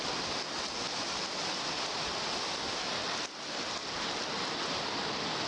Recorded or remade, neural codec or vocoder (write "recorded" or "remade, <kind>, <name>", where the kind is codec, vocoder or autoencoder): recorded